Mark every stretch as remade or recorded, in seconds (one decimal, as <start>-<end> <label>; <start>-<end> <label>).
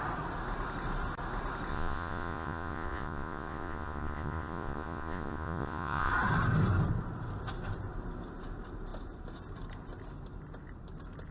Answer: 0.0-1.7 recorded; 1.7-6.1 remade; 6.1-11.3 recorded